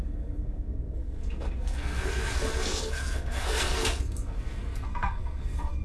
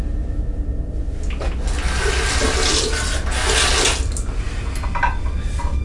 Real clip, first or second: second